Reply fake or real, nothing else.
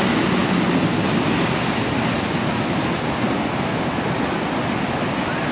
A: real